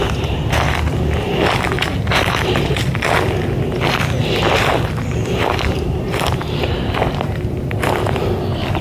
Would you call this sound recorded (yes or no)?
yes